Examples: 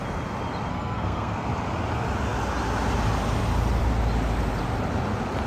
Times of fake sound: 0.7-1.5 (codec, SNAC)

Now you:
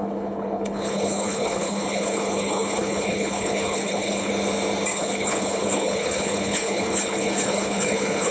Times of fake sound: 0.0-4.3 (codec, HILCodec); 4.9-8.3

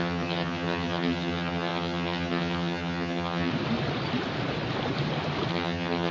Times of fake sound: 0.0-3.5 (vocoder, HiFi-GAN); 5.5-6.1

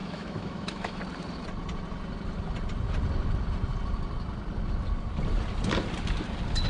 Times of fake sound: 0.0-1.0 (autoencoder, DAC-VAE)

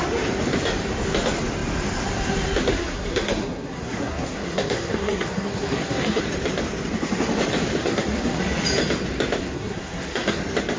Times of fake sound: 2.7-6.2 (codec, SNAC); 7.8-8.4; 9.4-10.4